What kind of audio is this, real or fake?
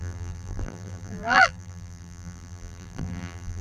fake